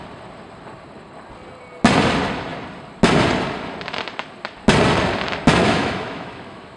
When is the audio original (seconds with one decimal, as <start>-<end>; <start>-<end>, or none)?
0.0-5.6